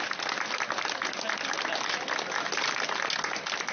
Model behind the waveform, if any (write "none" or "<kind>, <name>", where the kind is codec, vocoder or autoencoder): none